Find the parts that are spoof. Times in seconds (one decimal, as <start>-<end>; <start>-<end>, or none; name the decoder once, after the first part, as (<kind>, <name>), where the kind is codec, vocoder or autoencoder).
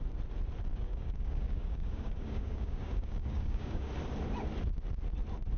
0.7-3.9 (codec, DAC)